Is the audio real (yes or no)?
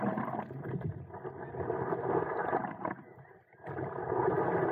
no